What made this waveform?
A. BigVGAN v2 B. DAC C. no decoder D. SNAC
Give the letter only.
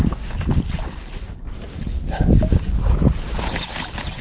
C